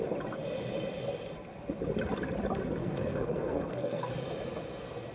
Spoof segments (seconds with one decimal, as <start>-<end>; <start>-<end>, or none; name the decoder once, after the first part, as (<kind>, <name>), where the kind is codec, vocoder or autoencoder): 2.8-4.1 (codec, SNAC)